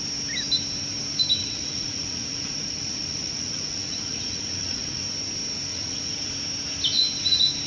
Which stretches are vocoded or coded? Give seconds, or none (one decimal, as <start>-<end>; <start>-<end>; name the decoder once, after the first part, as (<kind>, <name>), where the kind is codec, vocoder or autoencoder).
1.4-5.0 (vocoder, Vocos); 5.7-6.3